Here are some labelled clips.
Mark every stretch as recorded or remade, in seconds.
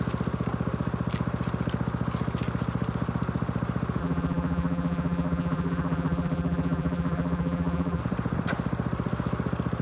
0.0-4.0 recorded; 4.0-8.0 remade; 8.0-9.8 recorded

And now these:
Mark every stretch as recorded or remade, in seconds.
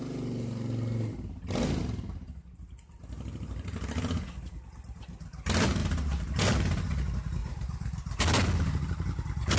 0.0-5.8 recorded; 5.8-6.4 remade; 6.4-7.4 recorded; 7.4-8.2 remade; 8.2-9.6 recorded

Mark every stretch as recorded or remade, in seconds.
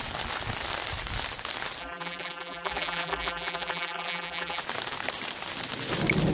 0.0-1.8 recorded; 1.8-4.6 remade; 4.6-6.3 recorded